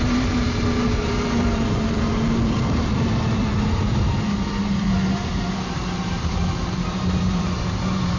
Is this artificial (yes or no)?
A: yes